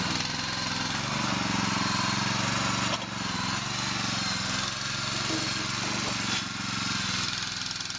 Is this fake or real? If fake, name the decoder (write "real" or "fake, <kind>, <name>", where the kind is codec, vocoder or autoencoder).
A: real